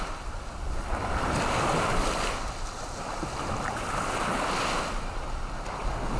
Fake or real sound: real